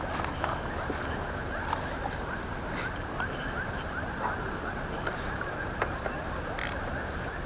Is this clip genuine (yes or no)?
yes